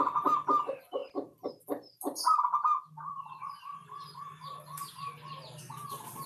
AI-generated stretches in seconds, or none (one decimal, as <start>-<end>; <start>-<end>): 0.0-3.8; 5.6-6.3